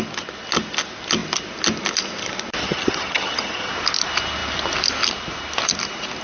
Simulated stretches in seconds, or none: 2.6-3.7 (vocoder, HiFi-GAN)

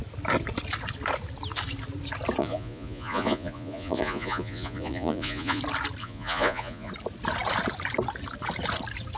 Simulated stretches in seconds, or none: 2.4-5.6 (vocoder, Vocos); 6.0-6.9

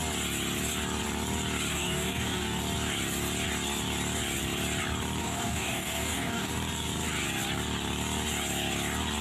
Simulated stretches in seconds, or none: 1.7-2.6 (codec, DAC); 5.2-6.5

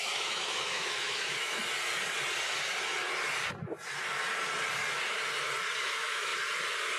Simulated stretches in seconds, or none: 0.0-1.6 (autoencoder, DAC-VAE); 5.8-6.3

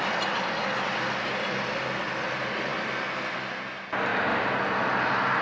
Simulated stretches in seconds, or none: none

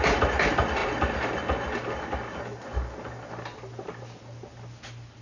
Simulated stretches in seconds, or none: none